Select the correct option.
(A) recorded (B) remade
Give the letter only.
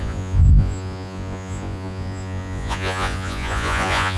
B